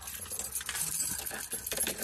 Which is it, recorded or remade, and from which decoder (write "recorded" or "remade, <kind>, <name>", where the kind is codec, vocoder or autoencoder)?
recorded